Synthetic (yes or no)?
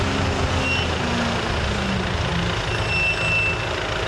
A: no